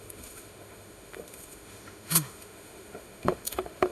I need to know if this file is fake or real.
fake